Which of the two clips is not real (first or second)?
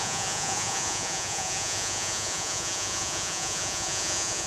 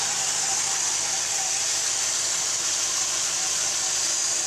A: first